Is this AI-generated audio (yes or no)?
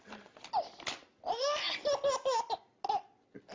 no